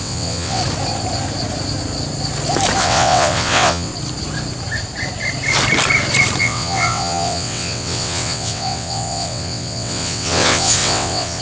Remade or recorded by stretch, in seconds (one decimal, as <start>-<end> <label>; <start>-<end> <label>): 0.0-0.6 remade; 0.6-2.8 recorded; 2.8-3.9 remade; 3.9-6.4 recorded; 6.4-11.4 remade